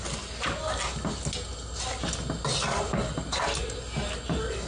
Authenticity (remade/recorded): recorded